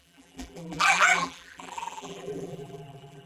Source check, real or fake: fake